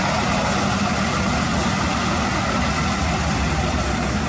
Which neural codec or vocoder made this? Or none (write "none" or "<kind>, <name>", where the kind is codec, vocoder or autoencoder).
none